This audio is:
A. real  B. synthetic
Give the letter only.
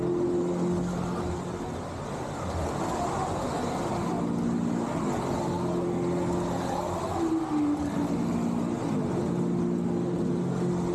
A